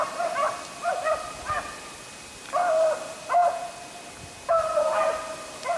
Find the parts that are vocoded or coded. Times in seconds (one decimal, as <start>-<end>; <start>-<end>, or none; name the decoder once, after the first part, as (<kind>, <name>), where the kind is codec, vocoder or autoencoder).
none